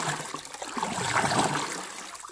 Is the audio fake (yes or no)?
no